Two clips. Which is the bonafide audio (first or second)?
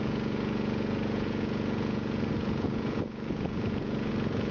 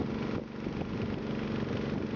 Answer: second